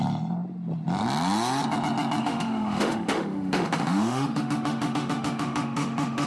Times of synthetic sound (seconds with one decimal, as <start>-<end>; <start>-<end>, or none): 2.2-6.3